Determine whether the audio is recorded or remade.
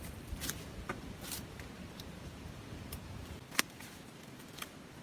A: recorded